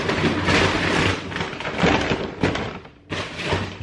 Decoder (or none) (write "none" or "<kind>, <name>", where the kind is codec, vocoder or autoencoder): vocoder, BigVGAN v2